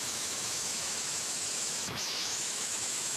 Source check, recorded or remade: remade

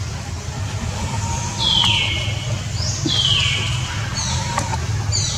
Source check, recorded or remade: recorded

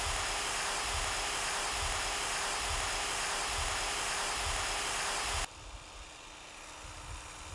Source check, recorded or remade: recorded